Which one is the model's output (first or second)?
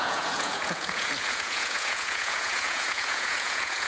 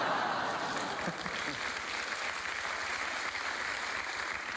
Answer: first